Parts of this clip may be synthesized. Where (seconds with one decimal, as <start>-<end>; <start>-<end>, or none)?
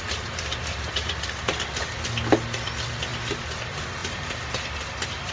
none